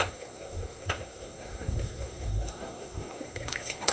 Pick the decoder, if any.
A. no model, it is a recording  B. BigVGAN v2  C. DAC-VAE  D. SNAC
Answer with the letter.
D